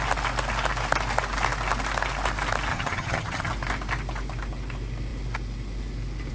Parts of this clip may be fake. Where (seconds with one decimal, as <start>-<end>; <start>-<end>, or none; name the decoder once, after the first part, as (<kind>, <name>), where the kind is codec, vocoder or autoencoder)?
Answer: 2.7-3.5 (vocoder, HiFi-GAN)